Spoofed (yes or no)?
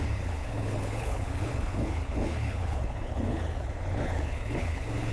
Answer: yes